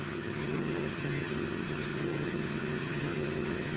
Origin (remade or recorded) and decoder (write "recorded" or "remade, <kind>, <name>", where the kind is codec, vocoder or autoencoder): remade, vocoder, HiFi-GAN